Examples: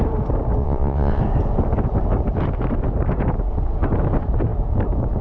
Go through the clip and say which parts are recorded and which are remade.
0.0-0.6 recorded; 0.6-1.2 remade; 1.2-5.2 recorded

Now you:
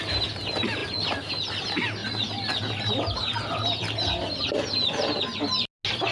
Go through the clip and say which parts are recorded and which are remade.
0.0-6.1 recorded